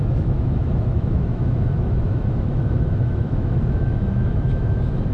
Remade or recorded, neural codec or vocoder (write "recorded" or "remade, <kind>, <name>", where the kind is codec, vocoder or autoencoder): remade, autoencoder, DAC-VAE